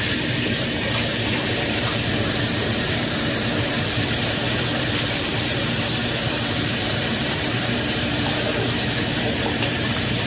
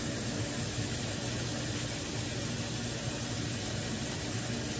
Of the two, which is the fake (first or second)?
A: first